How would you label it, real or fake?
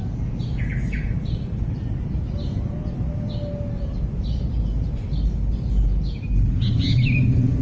real